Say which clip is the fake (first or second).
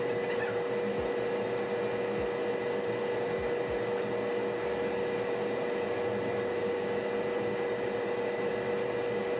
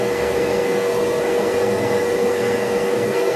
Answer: second